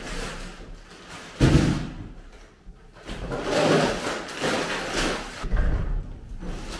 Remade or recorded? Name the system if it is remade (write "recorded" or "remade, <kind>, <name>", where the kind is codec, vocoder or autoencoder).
recorded